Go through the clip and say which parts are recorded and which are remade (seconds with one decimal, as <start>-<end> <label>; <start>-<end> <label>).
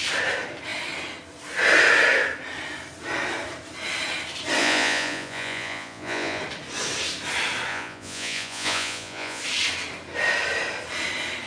0.0-4.6 recorded; 4.6-6.4 remade; 6.4-7.7 recorded; 7.7-9.4 remade; 9.4-11.5 recorded